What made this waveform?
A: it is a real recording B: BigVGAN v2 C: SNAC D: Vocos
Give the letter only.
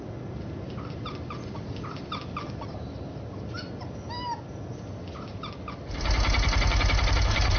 A